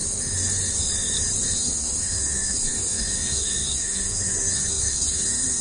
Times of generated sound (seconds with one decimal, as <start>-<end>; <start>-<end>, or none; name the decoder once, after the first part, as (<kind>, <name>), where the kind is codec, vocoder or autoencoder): 1.6-5.6 (codec, SNAC)